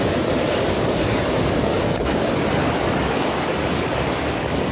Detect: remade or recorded remade